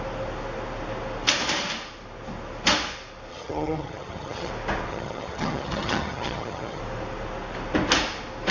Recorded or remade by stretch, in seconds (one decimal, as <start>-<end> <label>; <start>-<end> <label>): 0.0-3.3 recorded; 3.3-4.5 remade; 4.5-4.9 recorded; 4.9-6.8 remade; 6.8-8.5 recorded